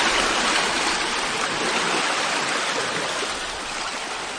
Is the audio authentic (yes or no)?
yes